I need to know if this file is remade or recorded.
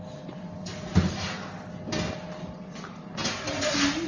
recorded